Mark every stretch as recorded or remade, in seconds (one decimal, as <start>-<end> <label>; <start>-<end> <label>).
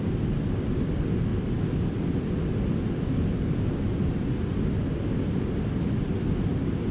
0.0-6.9 recorded